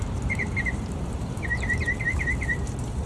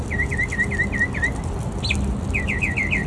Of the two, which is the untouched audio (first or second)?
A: second